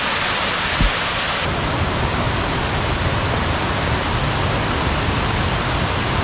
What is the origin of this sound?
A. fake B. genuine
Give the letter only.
B